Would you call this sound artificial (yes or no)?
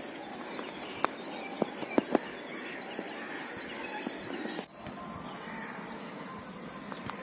no